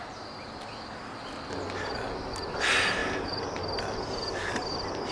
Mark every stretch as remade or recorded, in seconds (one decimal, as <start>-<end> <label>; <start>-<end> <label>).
0.0-3.0 recorded; 3.0-3.6 remade; 3.6-5.1 recorded

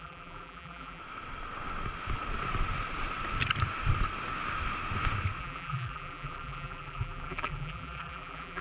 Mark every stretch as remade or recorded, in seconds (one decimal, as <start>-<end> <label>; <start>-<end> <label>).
0.0-1.0 remade; 1.0-5.4 recorded; 5.4-8.6 remade

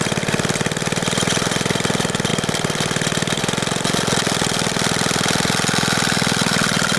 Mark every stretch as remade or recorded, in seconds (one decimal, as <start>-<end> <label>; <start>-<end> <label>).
0.0-7.0 recorded

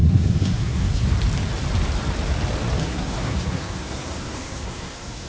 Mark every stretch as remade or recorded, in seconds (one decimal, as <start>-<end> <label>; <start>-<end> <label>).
0.0-1.1 remade; 1.1-2.8 recorded; 2.8-5.3 remade

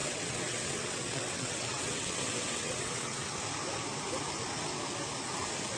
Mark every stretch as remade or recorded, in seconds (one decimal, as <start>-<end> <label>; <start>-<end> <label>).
0.0-3.4 remade; 3.4-5.8 recorded

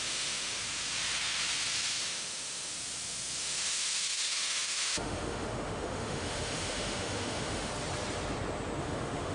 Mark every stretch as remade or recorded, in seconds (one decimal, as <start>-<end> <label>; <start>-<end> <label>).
0.0-0.6 remade; 0.6-2.0 recorded; 2.0-2.7 remade; 2.7-3.4 recorded; 3.4-7.7 remade; 7.7-8.8 recorded; 8.8-9.3 remade

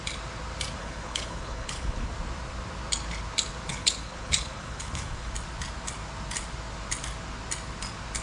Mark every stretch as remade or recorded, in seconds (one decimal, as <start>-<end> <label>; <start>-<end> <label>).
0.0-0.8 recorded; 0.8-2.1 remade; 2.1-3.7 recorded; 3.7-5.3 remade; 5.3-8.2 recorded